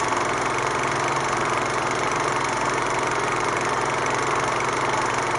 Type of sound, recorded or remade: remade